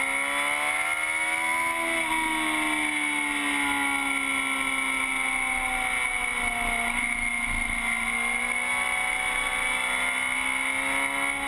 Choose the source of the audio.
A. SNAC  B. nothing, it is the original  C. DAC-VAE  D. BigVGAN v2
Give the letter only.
B